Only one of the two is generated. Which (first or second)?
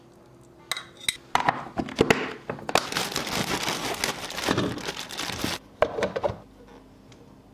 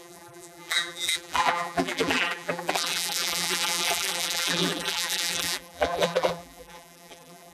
second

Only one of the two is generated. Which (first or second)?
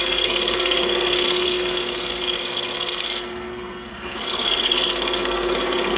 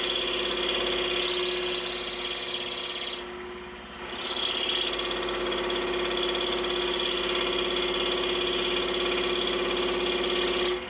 first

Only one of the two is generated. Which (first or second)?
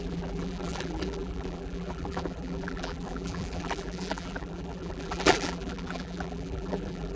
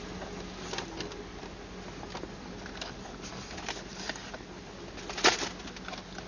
first